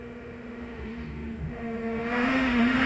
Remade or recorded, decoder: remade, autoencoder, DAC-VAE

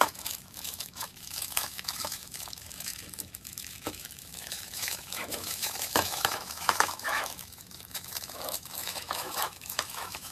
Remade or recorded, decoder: remade, autoencoder, DAC-VAE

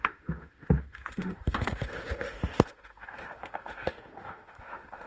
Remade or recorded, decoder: remade, autoencoder, DAC-VAE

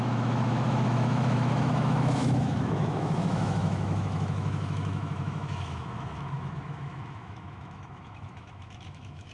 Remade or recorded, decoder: remade, autoencoder, DAC-VAE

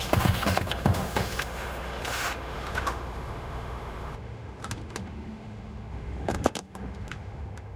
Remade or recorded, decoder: remade, autoencoder, DAC-VAE